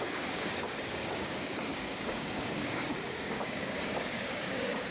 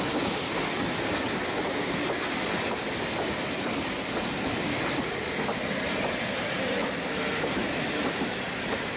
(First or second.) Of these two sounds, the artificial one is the first